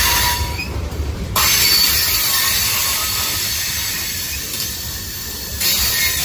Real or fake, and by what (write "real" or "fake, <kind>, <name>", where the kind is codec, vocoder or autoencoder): fake, vocoder, BigVGAN v2